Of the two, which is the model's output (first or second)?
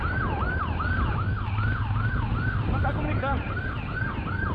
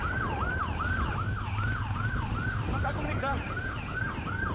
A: second